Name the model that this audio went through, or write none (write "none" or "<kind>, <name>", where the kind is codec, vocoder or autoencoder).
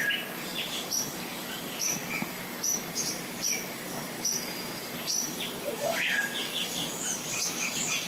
codec, DAC